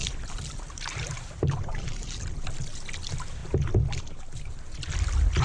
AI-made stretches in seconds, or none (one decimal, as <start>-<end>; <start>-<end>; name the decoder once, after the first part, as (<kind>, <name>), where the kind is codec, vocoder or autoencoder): 0.0-2.4 (vocoder, BigVGAN v2)